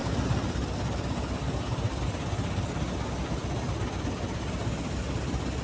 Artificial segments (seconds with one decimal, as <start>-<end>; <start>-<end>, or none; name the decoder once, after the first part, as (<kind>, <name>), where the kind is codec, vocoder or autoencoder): none